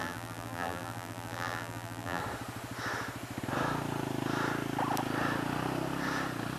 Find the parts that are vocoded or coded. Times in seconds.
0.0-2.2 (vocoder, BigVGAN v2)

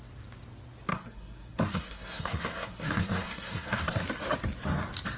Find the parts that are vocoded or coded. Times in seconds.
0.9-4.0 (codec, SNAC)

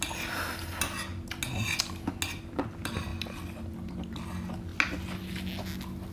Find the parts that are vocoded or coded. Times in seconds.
none

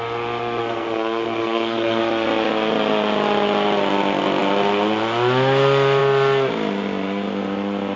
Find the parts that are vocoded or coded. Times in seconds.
0.6-2.0 (codec, SNAC)

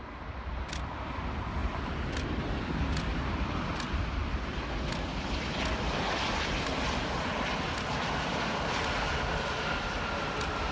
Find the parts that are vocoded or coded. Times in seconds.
none

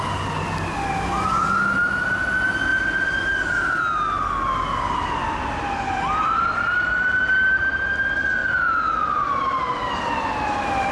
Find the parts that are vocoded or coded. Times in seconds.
none